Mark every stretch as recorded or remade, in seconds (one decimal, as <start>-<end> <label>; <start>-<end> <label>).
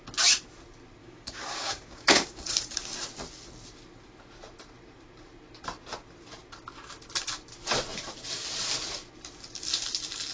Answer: 0.0-1.0 recorded; 1.0-2.9 remade; 2.9-10.3 recorded